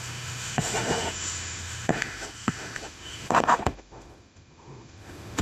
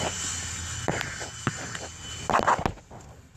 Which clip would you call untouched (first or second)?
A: second